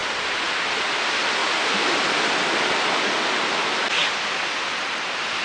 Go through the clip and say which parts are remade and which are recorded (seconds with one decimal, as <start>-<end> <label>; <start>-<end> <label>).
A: 0.0-5.4 recorded